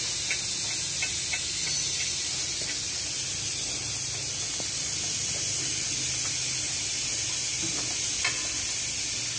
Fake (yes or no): no